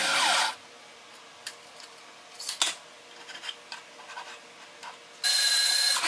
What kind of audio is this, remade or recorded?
recorded